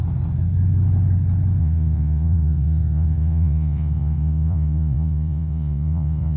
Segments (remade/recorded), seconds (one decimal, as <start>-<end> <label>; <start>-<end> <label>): 0.0-1.6 recorded; 1.6-6.4 remade